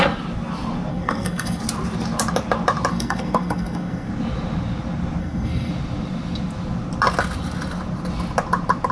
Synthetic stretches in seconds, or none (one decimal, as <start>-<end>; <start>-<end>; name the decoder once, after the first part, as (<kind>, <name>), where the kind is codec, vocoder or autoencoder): 0.9-1.6 (codec, SNAC); 2.9-4.1; 5.2-5.7